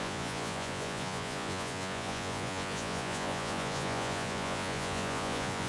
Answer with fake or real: fake